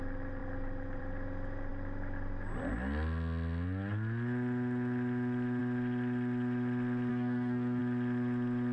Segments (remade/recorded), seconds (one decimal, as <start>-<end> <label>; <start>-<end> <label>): 0.0-7.1 recorded; 7.1-7.8 remade; 7.8-8.7 recorded